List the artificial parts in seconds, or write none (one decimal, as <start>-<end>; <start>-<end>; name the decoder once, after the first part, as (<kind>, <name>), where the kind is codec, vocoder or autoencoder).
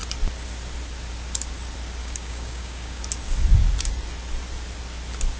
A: 2.0-3.0 (codec, DAC)